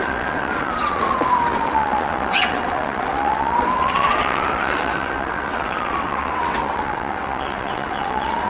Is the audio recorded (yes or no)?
no